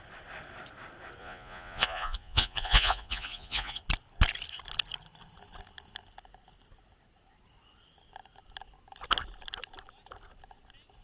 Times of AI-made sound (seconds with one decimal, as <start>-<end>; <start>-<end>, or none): 1.2-3.8